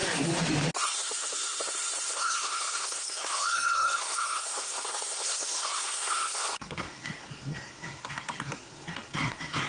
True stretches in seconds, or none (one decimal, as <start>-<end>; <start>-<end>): 0.0-0.7